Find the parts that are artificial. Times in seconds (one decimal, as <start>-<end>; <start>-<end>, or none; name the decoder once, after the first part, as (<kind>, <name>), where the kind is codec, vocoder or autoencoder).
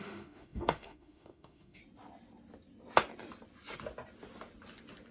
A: 0.0-1.8 (autoencoder, DAC-VAE)